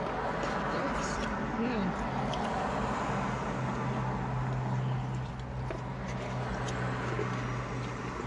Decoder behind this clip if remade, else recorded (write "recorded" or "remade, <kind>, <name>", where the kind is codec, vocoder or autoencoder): recorded